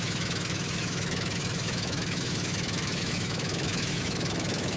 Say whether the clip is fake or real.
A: fake